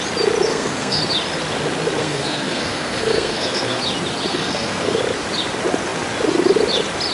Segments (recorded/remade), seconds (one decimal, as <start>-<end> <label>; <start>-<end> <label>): 0.0-0.5 recorded; 0.5-1.0 remade; 1.0-2.0 recorded; 2.0-3.8 remade; 3.8-4.3 recorded; 4.3-5.0 remade; 5.0-7.1 recorded